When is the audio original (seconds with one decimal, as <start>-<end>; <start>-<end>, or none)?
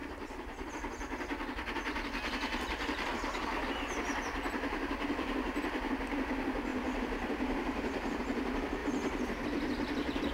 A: 0.7-6.7; 8.2-8.8; 9.4-10.3